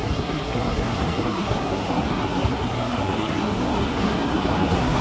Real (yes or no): no